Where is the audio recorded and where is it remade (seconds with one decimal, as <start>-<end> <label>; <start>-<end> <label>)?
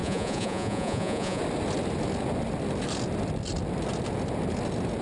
0.0-1.4 remade; 1.4-5.0 recorded